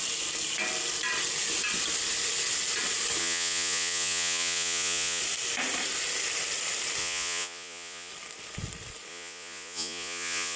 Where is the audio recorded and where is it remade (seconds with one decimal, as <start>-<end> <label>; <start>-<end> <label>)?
0.0-3.2 recorded; 3.2-5.2 remade; 5.2-7.0 recorded; 7.0-8.1 remade; 8.1-9.1 recorded; 9.1-10.6 remade